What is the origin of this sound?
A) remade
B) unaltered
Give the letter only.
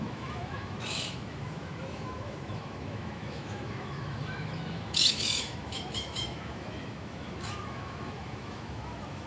A